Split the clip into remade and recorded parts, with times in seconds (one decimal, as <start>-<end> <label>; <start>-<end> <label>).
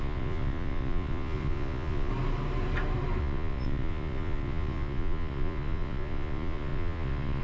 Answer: 0.0-2.1 remade; 2.1-3.2 recorded; 3.2-7.4 remade